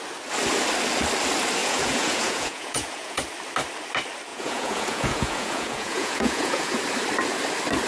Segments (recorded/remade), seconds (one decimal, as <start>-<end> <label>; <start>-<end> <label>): 0.0-1.6 recorded; 1.6-3.2 remade; 3.2-4.3 recorded; 4.3-6.8 remade; 6.8-7.9 recorded